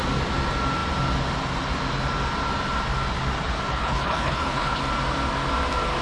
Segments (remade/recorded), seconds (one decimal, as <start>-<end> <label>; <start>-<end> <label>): 0.0-3.7 recorded; 3.7-4.8 remade; 4.8-6.0 recorded